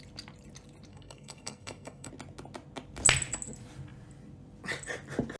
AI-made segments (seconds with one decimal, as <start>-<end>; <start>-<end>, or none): 0.9-2.1